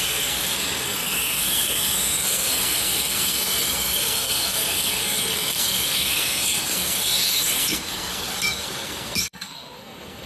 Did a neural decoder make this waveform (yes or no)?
yes